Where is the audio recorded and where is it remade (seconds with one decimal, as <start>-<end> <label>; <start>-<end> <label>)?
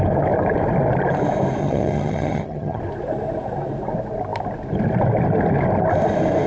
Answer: 0.0-1.6 recorded; 1.6-2.8 remade; 2.8-6.5 recorded